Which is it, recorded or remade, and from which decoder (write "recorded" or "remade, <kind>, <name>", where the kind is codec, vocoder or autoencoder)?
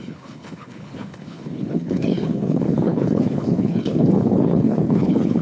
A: remade, codec, HILCodec